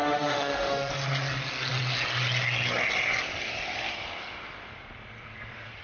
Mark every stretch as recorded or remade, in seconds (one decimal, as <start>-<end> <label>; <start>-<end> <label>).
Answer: 0.0-0.9 remade; 0.9-5.8 recorded